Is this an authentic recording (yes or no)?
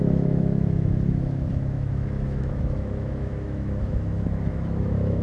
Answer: no